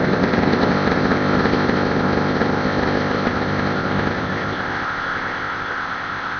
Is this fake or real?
fake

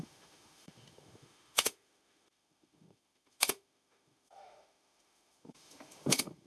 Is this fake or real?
fake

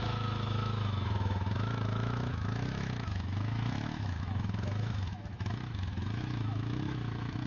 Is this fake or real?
fake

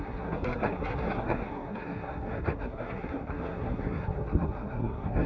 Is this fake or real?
fake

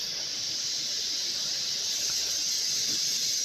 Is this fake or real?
real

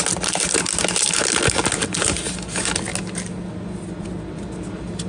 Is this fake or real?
real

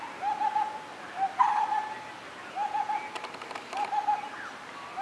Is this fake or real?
real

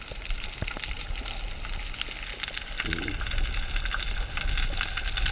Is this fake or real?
real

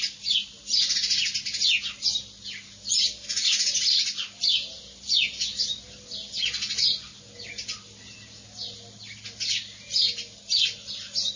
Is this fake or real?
real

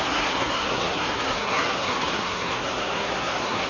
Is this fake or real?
fake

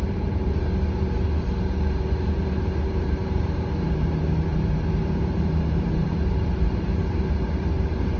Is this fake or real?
fake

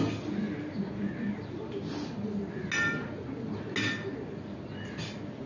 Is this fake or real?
real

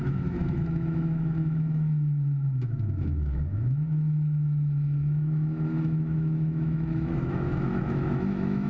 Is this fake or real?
fake